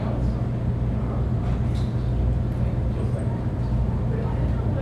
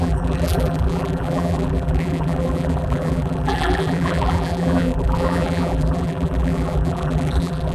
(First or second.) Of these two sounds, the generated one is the second